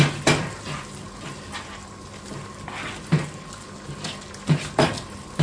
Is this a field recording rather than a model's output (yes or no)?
yes